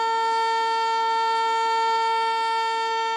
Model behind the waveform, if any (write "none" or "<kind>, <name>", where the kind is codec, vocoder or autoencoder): none